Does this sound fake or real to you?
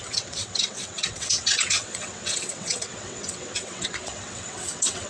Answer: fake